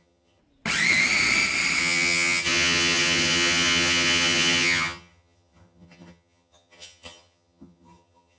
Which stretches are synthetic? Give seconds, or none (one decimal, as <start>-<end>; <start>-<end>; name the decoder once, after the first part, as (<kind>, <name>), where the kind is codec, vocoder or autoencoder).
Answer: 0.0-0.4 (vocoder, HiFi-GAN); 1.8-8.4